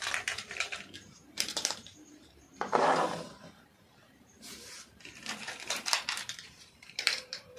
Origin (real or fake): fake